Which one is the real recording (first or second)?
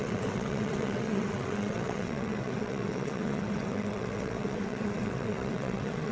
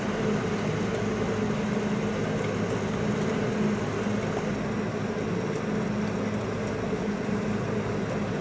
second